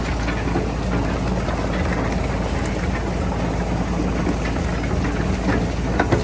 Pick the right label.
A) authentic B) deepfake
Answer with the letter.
A